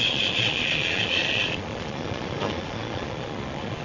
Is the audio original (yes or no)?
no